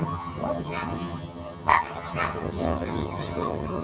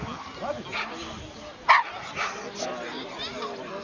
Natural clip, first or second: second